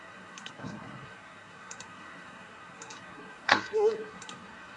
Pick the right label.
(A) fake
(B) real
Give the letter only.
A